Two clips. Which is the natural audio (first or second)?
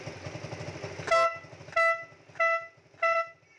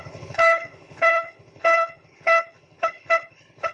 first